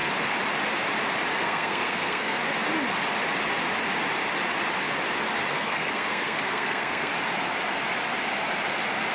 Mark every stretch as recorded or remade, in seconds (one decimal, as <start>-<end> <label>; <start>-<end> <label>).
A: 0.0-1.4 recorded; 1.4-2.4 remade; 2.4-5.5 recorded; 5.5-7.1 remade; 7.1-9.1 recorded